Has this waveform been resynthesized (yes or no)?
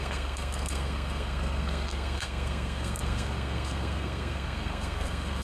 yes